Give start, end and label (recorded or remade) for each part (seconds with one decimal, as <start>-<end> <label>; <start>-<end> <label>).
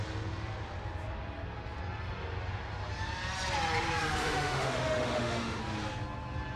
0.0-4.2 recorded; 4.2-5.6 remade; 5.6-6.6 recorded